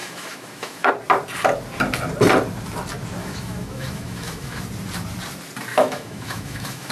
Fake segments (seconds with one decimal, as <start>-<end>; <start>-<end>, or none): 0.0-0.9; 3.2-4.6; 5.7-6.9